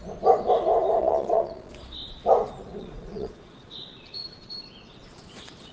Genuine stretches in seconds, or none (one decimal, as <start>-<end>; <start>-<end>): 0.0-1.0; 1.7-2.8